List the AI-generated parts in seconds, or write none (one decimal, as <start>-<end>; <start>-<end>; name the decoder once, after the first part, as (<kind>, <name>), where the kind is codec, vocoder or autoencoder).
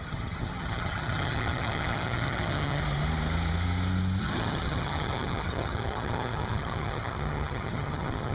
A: 0.0-2.8 (vocoder, HiFi-GAN); 4.2-8.3